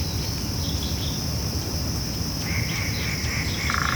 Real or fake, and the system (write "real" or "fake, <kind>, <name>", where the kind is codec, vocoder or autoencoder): real